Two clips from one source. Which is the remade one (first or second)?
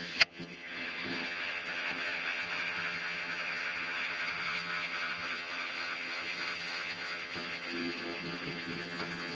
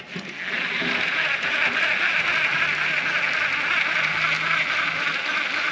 first